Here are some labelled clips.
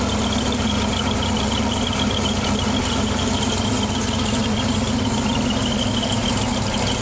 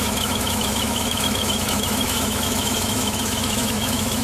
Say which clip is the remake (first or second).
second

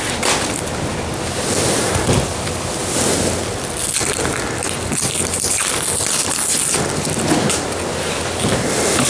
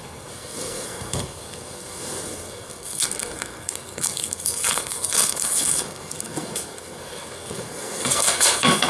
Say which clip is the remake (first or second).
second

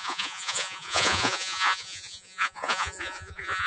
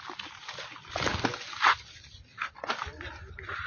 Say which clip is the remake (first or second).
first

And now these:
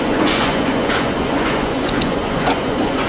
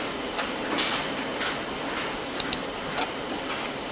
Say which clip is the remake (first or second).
first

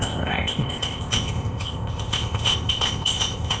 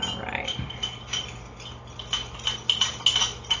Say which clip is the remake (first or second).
first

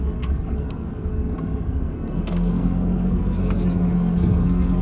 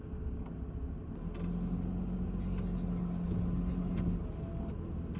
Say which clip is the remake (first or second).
first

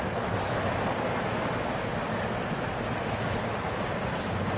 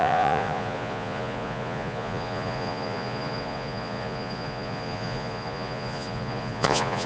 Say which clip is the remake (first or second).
second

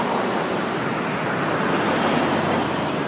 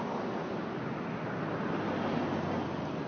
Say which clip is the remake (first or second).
first